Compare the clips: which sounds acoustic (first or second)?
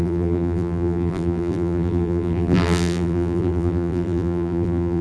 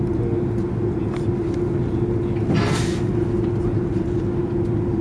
second